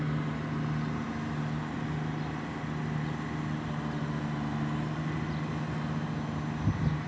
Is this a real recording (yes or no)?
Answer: yes